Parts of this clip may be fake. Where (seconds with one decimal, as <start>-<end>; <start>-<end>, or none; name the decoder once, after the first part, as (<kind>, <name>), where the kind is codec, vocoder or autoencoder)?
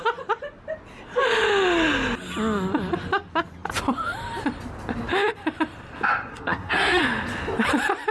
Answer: 6.3-7.0 (codec, SNAC)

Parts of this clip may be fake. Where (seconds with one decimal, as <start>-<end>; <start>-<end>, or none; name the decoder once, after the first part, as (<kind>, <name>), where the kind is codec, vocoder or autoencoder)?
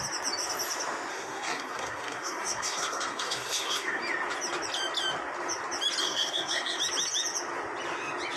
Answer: 1.1-4.0 (codec, SNAC); 6.0-6.8